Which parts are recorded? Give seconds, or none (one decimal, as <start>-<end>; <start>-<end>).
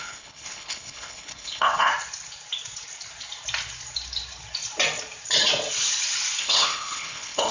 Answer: 1.9-6.4